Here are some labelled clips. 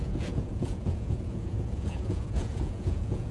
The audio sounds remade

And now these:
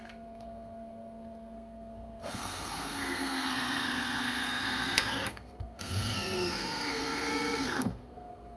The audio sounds remade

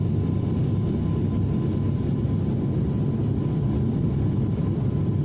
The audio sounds recorded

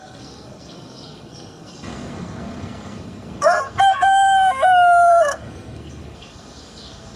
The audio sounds remade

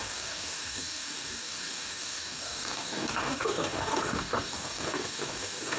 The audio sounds remade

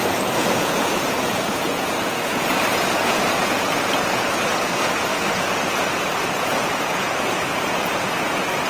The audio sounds remade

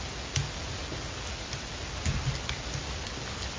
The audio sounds recorded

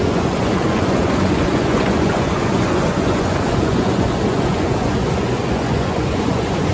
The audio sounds remade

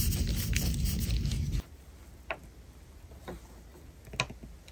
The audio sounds recorded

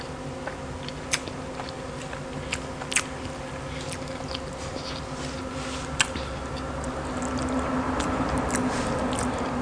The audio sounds recorded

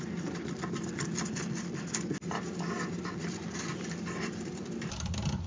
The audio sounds recorded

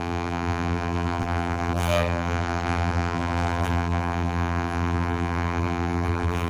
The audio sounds remade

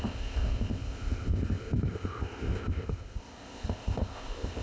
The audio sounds remade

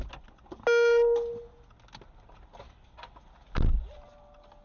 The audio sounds recorded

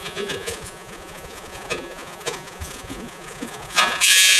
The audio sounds remade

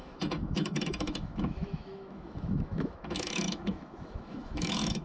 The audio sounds remade